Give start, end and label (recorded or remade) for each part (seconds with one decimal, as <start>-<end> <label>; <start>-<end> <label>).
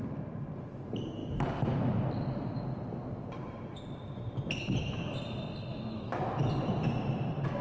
0.0-5.7 recorded; 5.7-6.4 remade; 6.4-7.6 recorded